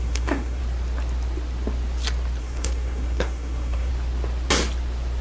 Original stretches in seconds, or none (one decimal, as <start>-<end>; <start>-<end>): 0.6-2.4; 3.9-5.2